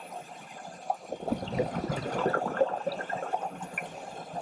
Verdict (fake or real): real